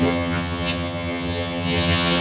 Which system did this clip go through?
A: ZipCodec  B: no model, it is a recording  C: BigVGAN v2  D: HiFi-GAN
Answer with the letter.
D